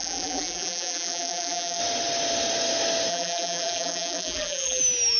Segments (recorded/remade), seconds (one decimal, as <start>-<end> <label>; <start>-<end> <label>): 0.0-1.8 remade; 1.8-3.1 recorded; 3.1-4.8 remade; 4.8-5.2 recorded